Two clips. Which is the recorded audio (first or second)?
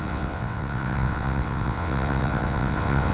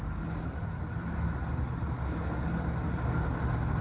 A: second